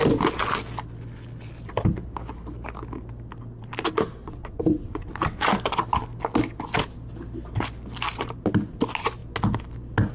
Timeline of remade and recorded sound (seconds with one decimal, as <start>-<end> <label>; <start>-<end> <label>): 0.0-4.2 recorded; 4.2-5.5 remade; 5.5-10.1 recorded